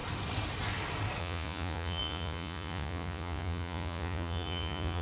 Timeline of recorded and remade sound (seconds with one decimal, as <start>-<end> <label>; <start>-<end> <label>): 0.0-1.2 recorded; 1.2-5.0 remade

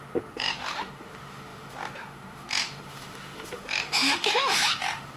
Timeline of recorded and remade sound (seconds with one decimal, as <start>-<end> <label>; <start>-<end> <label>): 0.0-5.2 remade